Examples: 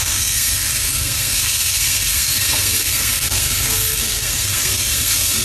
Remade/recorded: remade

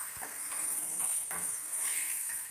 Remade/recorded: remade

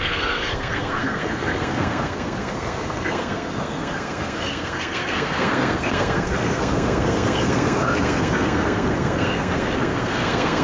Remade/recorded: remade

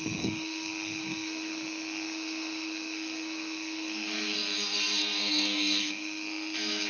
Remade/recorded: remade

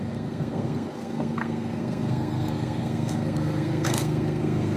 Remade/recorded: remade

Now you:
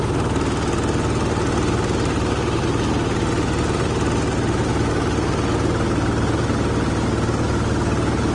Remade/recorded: recorded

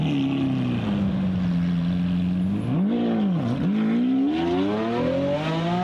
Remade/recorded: recorded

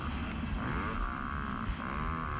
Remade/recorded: recorded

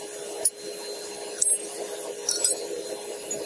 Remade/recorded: recorded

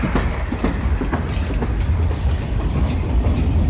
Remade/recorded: recorded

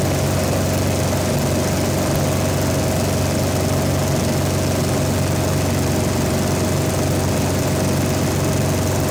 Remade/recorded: recorded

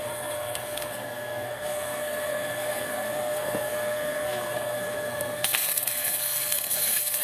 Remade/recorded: remade